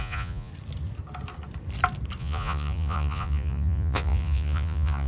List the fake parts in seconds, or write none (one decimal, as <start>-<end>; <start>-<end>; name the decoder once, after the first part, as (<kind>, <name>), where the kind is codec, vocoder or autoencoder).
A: 0.0-0.5 (vocoder, Vocos); 2.2-5.1